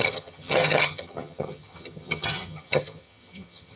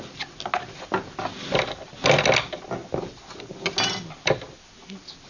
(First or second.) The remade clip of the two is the first